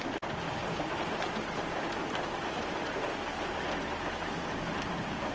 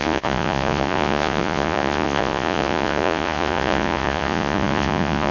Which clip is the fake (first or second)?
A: second